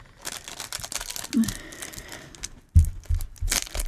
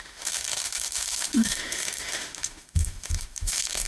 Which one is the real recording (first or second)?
first